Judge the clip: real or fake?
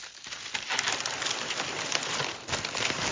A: real